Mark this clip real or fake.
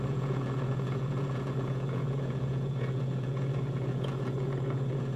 fake